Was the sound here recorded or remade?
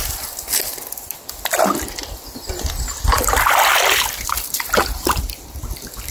recorded